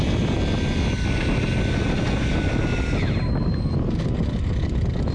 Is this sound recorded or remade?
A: recorded